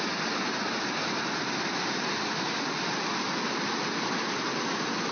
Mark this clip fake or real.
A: real